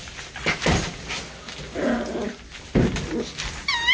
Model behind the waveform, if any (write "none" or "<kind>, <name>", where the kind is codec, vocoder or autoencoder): none